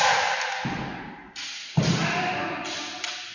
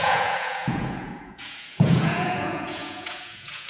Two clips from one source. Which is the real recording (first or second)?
first